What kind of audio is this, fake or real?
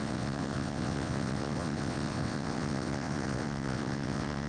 fake